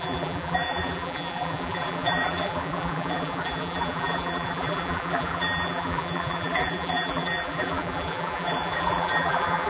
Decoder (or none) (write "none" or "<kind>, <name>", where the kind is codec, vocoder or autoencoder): vocoder, BigVGAN v2